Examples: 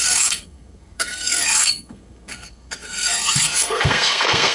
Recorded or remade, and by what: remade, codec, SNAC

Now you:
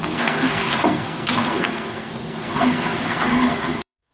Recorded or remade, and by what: remade, codec, SNAC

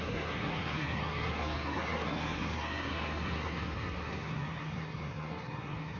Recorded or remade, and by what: remade, codec, SNAC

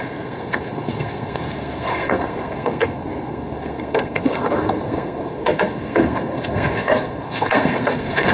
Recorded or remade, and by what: remade, codec, SNAC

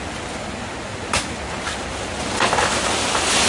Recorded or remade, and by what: recorded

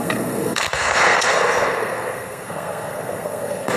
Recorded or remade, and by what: remade, codec, SNAC